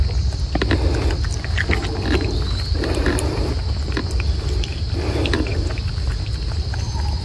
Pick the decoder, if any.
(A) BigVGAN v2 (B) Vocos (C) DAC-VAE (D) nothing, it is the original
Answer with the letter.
D